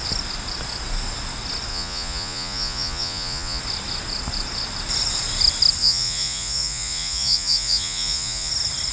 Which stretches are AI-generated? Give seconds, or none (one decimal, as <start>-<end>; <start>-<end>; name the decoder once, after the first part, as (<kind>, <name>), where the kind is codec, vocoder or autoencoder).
1.7-3.6 (vocoder, Vocos); 5.8-8.5